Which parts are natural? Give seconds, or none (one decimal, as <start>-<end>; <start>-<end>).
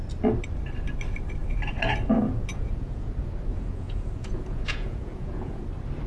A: 0.0-2.5; 3.1-3.5; 5.6-6.1